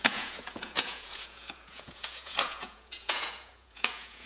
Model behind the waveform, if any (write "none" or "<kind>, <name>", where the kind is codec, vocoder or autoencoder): vocoder, Vocos